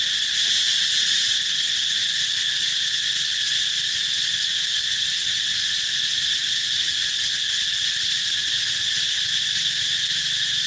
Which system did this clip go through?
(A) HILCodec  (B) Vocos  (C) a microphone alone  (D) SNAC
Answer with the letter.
C